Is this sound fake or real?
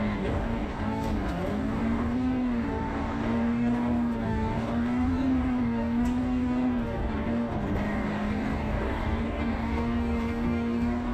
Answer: fake